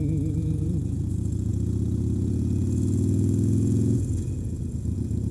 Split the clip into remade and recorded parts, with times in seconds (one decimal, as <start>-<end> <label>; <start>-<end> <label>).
0.0-5.3 remade